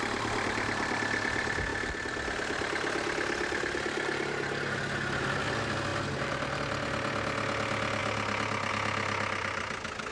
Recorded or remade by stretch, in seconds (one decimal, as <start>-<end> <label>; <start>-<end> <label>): 0.0-10.1 recorded